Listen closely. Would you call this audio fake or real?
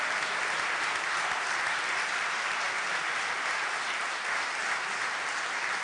real